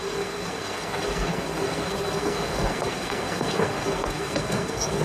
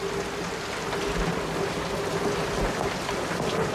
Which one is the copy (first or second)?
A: first